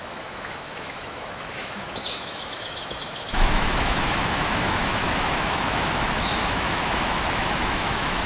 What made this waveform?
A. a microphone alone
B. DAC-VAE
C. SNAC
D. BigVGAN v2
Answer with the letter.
B